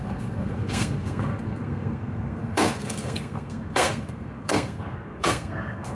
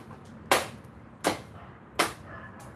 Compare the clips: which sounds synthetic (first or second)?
first